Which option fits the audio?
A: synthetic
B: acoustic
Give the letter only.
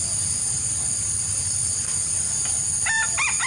B